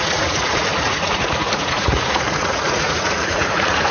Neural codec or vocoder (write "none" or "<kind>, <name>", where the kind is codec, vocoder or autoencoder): vocoder, Vocos